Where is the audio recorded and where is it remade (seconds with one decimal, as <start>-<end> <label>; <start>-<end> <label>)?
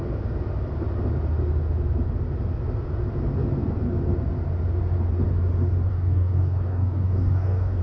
0.0-5.9 recorded; 5.9-7.8 remade